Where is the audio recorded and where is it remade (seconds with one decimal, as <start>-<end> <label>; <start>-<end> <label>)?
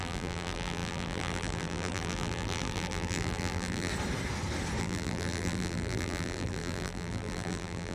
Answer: 0.0-3.9 remade; 3.9-4.8 recorded; 4.8-7.9 remade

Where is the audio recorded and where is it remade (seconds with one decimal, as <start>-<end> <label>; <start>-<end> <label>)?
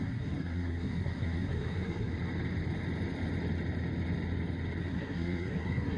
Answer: 0.0-2.1 remade; 2.1-4.8 recorded; 4.8-6.0 remade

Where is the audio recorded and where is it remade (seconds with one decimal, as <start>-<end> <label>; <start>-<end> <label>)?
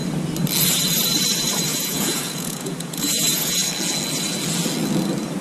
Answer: 0.0-1.7 recorded; 1.7-3.7 remade; 3.7-5.4 recorded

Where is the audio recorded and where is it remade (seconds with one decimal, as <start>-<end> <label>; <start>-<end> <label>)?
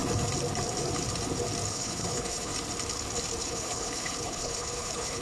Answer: 0.0-1.7 recorded; 1.7-2.5 remade; 2.5-3.4 recorded; 3.4-5.2 remade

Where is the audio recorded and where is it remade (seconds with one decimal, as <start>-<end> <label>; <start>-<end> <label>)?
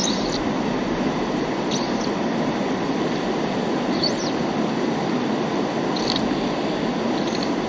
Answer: 0.0-7.7 recorded